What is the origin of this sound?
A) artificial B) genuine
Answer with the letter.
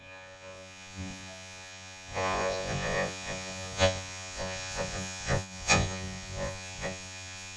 A